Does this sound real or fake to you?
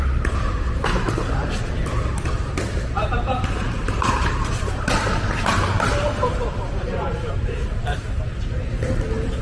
fake